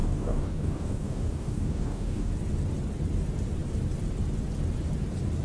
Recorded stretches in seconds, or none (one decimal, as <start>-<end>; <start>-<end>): 2.3-5.4